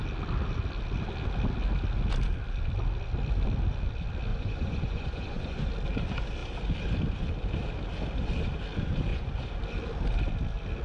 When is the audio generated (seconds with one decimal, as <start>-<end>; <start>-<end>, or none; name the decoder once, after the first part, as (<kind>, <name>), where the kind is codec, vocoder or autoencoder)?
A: 4.3-5.7 (vocoder, Vocos); 9.1-9.6